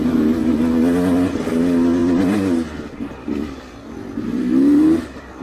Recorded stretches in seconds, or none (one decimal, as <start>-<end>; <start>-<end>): 0.0-5.4